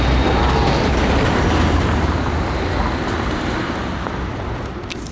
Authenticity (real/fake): real